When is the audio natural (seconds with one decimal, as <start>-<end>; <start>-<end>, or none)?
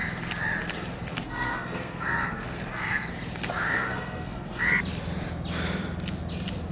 0.0-1.1; 3.1-3.7; 4.6-6.7